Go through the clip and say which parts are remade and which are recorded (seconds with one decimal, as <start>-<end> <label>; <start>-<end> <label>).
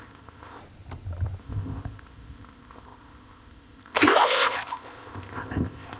0.0-0.6 remade; 0.6-1.4 recorded; 1.4-6.0 remade